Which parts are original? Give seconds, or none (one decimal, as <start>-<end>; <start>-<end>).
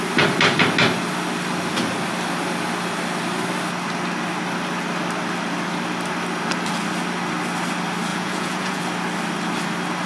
0.0-8.1; 8.8-10.1